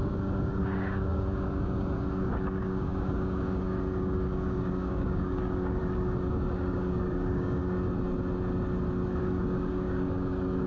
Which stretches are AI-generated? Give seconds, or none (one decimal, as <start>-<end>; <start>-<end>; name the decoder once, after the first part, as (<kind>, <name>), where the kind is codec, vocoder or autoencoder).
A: 0.0-5.8 (codec, DAC); 6.5-7.6; 9.2-10.7